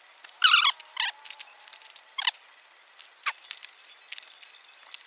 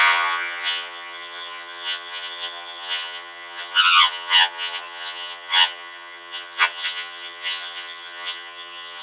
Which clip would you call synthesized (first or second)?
second